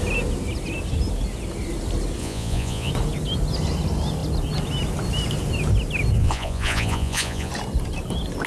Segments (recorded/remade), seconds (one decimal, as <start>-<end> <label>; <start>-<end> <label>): 0.0-2.2 recorded; 2.2-2.9 remade; 2.9-6.2 recorded; 6.2-7.5 remade; 7.5-8.5 recorded